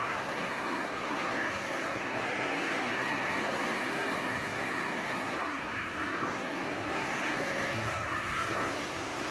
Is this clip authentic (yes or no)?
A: no